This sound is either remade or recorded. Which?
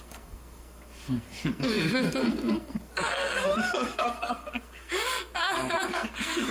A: remade